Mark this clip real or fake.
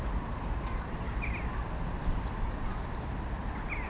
real